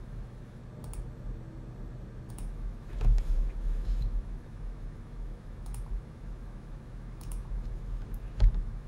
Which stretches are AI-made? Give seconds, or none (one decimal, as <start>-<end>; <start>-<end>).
0.0-0.6; 2.3-8.9